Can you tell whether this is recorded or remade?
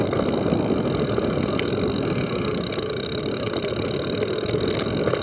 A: recorded